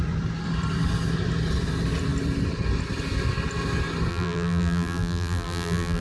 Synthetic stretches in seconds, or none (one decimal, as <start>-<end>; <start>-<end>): 4.1-6.0